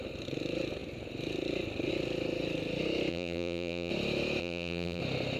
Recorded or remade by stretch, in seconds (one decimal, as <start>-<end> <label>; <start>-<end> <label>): 0.0-3.1 recorded; 3.1-3.9 remade; 3.9-4.4 recorded; 4.4-5.0 remade; 5.0-5.4 recorded